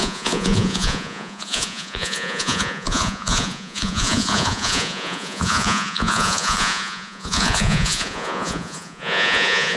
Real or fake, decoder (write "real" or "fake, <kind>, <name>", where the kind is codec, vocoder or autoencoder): fake, vocoder, Vocos